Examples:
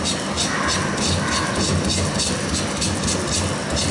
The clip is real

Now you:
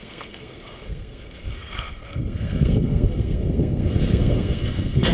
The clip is fake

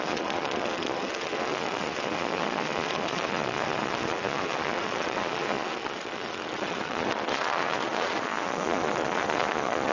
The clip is fake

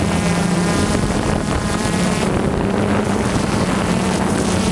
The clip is fake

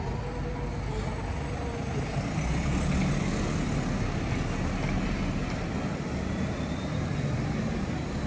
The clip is real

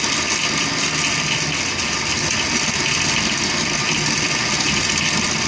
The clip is real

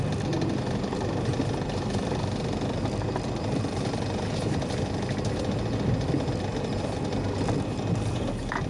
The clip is real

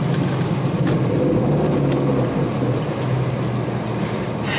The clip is real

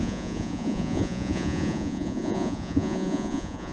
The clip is fake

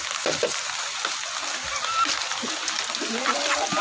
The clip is real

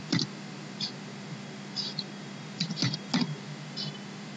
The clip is real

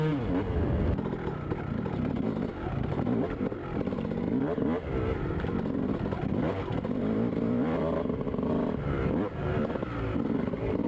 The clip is real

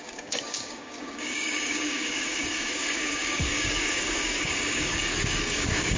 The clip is fake